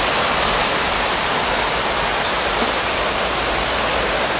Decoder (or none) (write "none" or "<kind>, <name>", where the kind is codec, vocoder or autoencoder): none